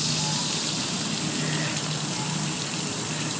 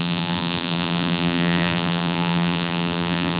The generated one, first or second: second